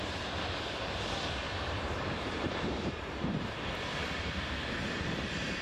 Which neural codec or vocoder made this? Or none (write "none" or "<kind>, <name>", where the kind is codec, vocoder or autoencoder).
vocoder, BigVGAN v2